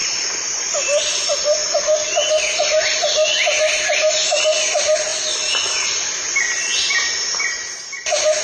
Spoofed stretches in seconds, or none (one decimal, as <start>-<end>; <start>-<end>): none